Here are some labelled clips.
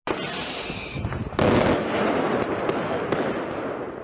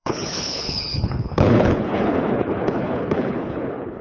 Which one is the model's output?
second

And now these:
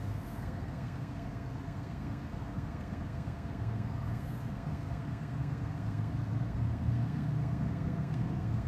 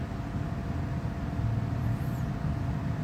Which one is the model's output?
first